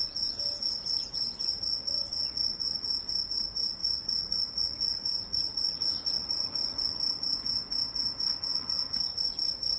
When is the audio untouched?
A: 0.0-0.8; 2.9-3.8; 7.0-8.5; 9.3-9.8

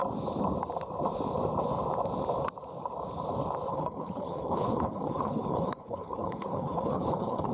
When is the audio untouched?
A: 0.0-3.7

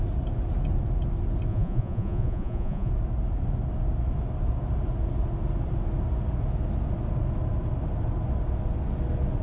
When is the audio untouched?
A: 0.0-1.5; 2.9-9.4

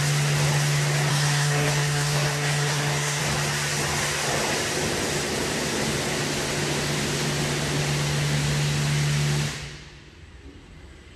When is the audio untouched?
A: 0.0-1.1; 3.2-11.2

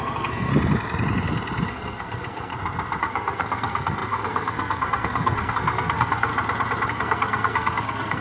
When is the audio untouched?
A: 0.5-1.7; 2.5-3.0; 6.3-6.9

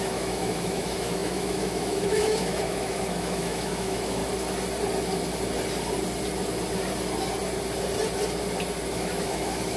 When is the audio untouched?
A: 4.2-8.9

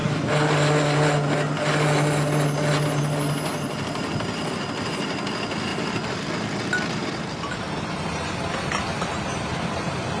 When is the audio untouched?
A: 0.0-5.7; 6.3-10.2

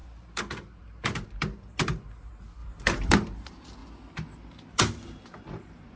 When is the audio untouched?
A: 3.8-4.5